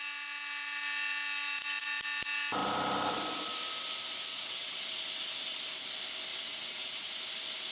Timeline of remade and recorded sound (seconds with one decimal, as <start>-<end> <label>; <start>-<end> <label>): 0.0-4.3 recorded; 4.3-4.9 remade; 4.9-6.3 recorded; 6.3-7.1 remade; 7.1-7.7 recorded